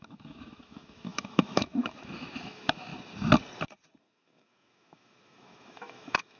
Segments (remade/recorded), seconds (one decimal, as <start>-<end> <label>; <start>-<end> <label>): 0.0-2.9 remade; 2.9-4.0 recorded; 4.0-6.4 remade